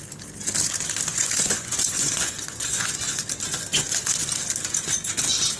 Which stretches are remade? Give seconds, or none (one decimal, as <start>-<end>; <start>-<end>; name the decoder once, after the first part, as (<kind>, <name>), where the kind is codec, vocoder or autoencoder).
1.1-3.2 (vocoder, Vocos); 3.7-4.2